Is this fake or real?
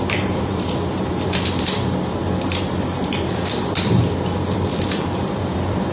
fake